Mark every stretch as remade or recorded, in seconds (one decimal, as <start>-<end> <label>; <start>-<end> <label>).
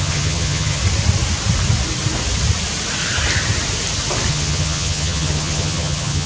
0.0-0.8 remade; 0.8-4.3 recorded; 4.3-6.3 remade